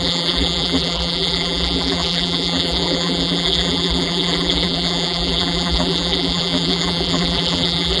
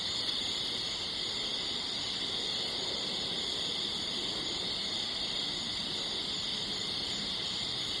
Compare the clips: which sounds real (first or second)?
second